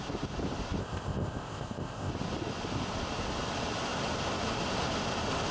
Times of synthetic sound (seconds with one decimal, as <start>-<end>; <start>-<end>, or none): 0.8-2.1